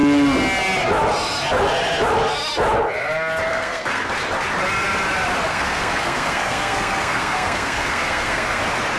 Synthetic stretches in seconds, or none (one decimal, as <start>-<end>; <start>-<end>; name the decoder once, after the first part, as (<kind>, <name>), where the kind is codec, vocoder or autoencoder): 3.5-4.1 (codec, SNAC); 5.5-8.6